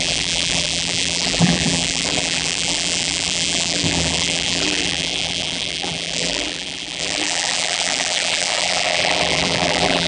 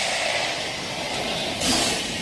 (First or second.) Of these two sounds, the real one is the second